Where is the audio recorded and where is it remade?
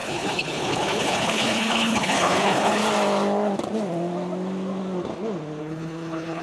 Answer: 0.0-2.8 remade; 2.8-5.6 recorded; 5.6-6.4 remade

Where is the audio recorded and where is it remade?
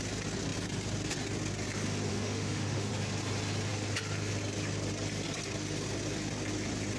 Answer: 0.0-2.1 recorded; 2.1-2.9 remade; 2.9-7.0 recorded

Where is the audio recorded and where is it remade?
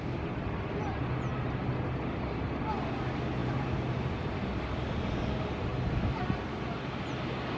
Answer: 0.0-3.4 recorded; 3.4-3.9 remade; 3.9-7.6 recorded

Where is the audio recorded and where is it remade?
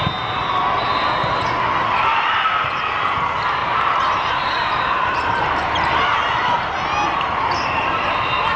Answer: 0.0-3.6 recorded; 3.6-5.9 remade; 5.9-8.6 recorded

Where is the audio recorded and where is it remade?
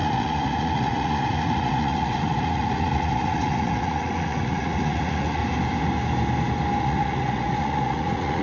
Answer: 0.0-5.4 remade; 5.4-6.8 recorded; 6.8-8.4 remade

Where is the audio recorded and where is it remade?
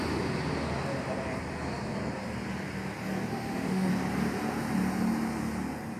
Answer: 0.0-3.3 recorded; 3.3-3.9 remade; 3.9-6.0 recorded